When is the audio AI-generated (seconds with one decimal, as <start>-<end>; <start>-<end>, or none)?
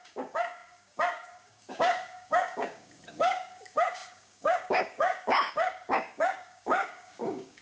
0.0-7.6